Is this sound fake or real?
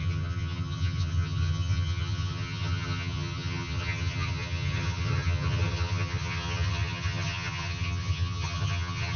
fake